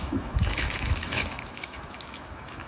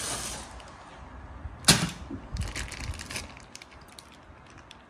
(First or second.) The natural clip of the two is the second